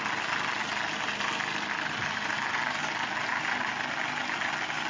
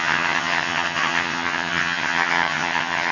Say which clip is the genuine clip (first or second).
first